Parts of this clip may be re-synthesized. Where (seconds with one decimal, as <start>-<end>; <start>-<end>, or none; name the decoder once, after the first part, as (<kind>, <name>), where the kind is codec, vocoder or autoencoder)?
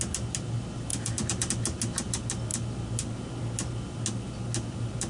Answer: 0.9-1.5 (vocoder, BigVGAN v2)